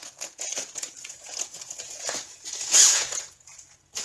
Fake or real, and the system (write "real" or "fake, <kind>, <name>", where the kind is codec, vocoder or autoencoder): fake, vocoder, Vocos